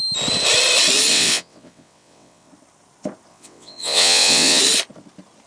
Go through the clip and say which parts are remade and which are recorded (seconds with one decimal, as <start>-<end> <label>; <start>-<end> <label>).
0.0-1.1 recorded; 1.1-2.5 remade; 2.5-3.3 recorded; 3.3-4.6 remade; 4.6-5.5 recorded